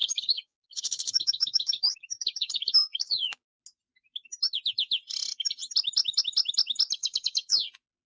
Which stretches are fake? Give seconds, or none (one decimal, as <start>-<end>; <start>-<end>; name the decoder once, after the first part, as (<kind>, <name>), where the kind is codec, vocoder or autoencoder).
0.0-3.6 (codec, DAC); 7.0-7.6